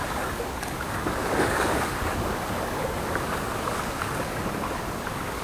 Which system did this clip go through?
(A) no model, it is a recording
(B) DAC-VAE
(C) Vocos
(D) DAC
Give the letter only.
D